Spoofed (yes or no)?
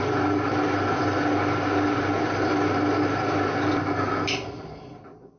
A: no